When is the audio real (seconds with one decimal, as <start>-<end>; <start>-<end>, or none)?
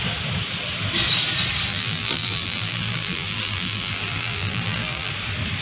0.0-1.7; 5.1-5.6